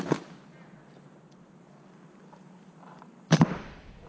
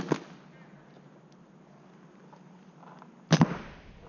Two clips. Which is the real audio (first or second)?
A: second